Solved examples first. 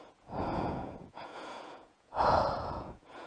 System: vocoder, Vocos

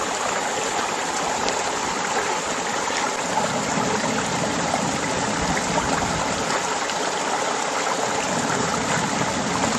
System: none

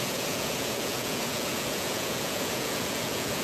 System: vocoder, Vocos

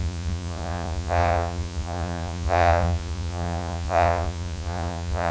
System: vocoder, Vocos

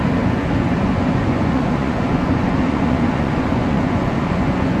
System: vocoder, Vocos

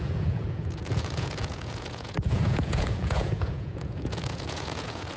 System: vocoder, Vocos